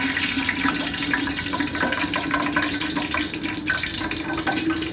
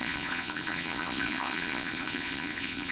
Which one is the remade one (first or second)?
second